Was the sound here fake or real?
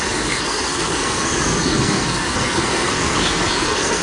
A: fake